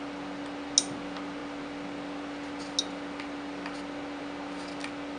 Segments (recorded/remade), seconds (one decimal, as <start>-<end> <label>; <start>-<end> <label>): 0.0-5.2 recorded